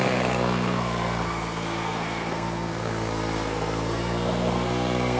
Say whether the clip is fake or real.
fake